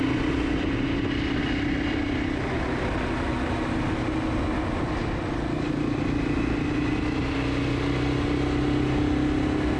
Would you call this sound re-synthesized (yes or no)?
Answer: no